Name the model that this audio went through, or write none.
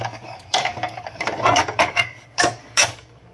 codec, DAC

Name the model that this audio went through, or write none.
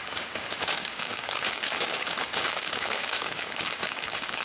codec, DAC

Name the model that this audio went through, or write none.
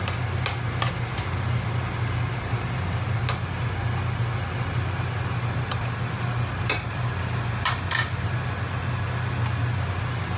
none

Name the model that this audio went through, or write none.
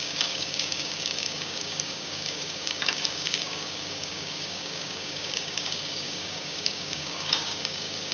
codec, DAC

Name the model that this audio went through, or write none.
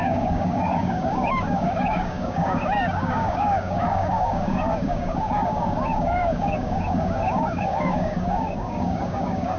codec, DAC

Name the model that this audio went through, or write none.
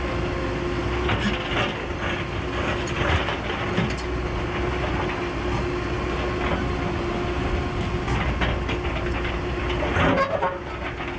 none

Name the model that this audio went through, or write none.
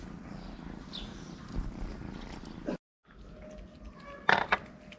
none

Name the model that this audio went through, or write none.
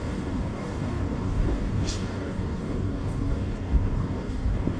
codec, DAC